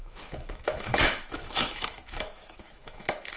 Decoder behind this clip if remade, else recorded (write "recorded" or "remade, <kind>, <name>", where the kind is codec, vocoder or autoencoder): remade, autoencoder, DAC-VAE